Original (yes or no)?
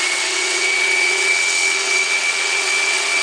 no